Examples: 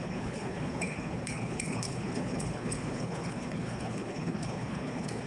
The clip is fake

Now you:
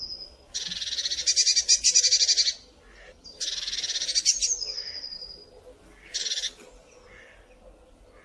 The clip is real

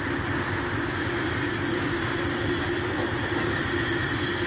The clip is real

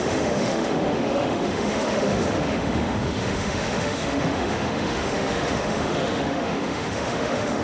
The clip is fake